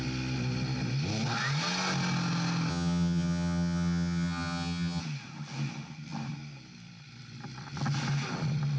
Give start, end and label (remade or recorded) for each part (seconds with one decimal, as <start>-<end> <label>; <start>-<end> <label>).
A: 0.0-2.7 recorded; 2.7-5.0 remade; 5.0-8.8 recorded